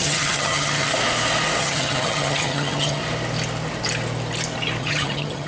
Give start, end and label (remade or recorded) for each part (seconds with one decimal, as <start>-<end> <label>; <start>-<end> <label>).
0.0-0.9 remade; 0.9-1.6 recorded; 1.6-3.0 remade; 3.0-4.8 recorded; 4.8-5.5 remade